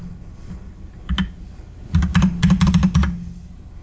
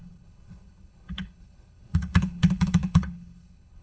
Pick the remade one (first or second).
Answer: second